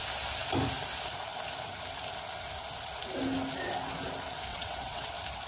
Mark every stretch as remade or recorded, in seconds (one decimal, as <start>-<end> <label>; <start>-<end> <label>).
0.0-4.5 recorded; 4.5-5.1 remade; 5.1-5.5 recorded